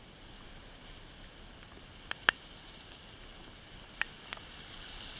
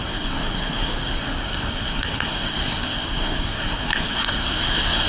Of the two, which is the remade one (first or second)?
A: second